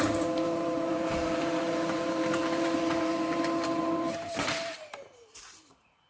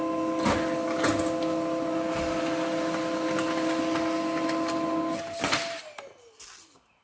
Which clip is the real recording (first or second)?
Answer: second